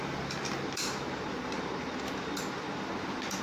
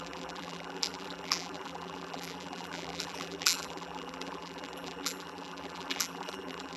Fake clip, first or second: second